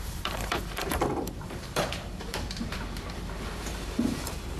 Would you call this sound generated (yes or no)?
yes